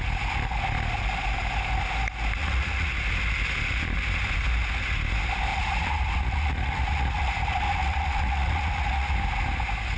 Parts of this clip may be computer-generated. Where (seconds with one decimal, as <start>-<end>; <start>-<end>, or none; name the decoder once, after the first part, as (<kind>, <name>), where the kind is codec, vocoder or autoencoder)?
2.4-2.9 (vocoder, Vocos); 5.5-9.2

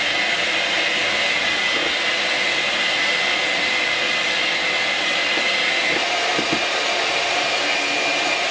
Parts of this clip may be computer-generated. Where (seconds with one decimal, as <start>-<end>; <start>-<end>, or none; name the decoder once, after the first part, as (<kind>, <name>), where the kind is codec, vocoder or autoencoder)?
none

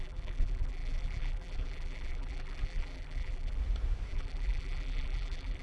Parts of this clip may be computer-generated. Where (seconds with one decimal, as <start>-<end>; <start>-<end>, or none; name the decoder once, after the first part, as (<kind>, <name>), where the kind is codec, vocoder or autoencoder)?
0.0-3.6 (vocoder, BigVGAN v2); 4.1-5.6

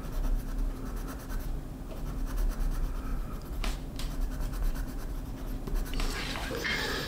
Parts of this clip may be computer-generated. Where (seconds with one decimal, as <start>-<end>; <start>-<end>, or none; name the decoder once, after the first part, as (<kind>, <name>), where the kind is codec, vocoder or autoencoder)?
3.1-5.1 (vocoder, BigVGAN v2); 5.9-6.5

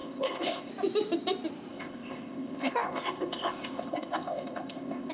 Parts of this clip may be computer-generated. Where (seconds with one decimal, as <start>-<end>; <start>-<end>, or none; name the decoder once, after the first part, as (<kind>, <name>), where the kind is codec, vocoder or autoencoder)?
0.0-0.7 (codec, ZipCodec); 1.7-5.1